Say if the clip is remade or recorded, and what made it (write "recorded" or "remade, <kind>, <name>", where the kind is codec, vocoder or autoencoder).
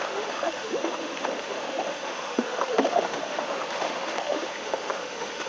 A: remade, autoencoder, DAC-VAE